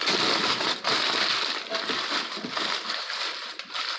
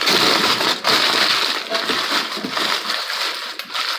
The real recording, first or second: second